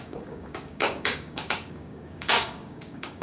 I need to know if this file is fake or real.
fake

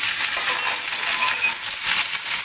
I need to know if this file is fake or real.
real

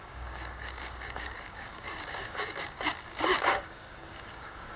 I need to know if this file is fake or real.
fake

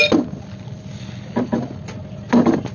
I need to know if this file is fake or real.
real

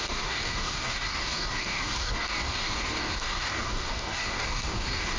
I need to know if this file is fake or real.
fake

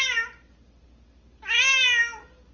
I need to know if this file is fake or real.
real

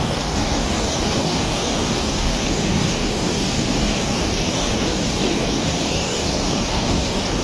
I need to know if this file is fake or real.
fake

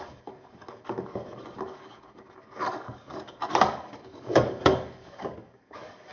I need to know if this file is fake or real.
fake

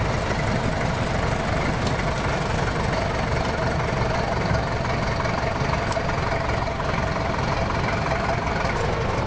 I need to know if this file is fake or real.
real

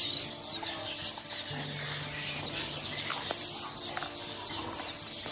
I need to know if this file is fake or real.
real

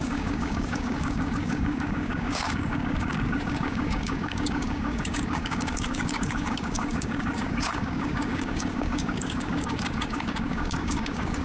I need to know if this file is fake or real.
fake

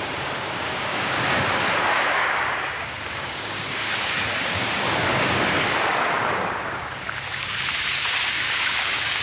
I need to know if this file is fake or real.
fake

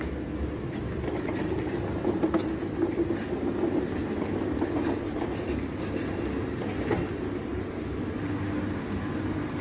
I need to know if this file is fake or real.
real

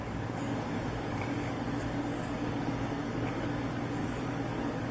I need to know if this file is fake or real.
fake